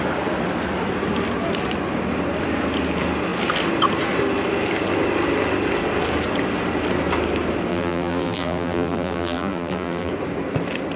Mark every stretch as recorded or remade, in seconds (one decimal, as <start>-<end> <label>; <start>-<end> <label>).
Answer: 0.0-7.7 recorded; 7.7-10.1 remade; 10.1-11.0 recorded